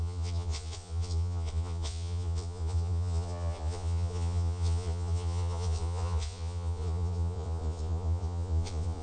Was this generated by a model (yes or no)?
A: yes